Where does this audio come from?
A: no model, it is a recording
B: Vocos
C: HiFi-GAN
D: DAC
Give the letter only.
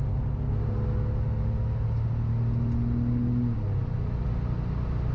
A